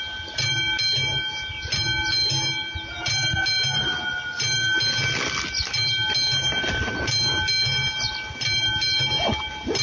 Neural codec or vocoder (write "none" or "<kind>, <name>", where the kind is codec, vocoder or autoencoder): none